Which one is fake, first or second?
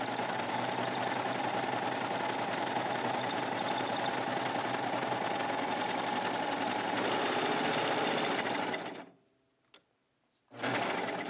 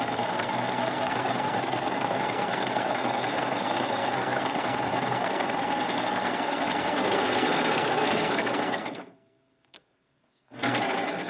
second